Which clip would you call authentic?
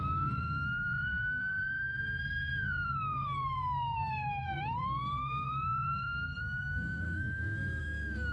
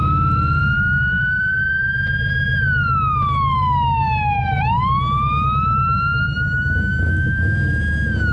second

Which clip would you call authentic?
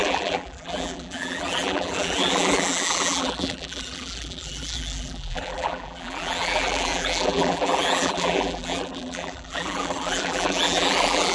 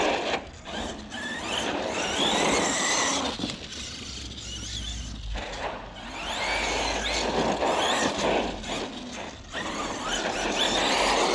second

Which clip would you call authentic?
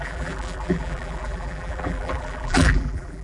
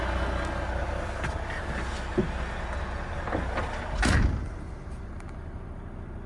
second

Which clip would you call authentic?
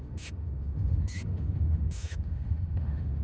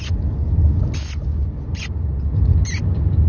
second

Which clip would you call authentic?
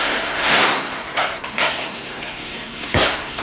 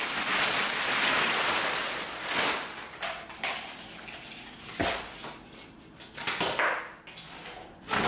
second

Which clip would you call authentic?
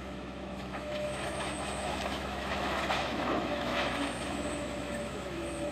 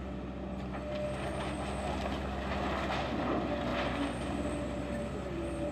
second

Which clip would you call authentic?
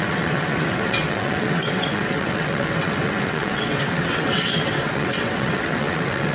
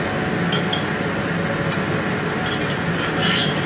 second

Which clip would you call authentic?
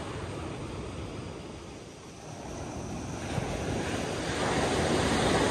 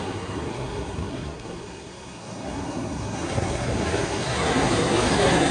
first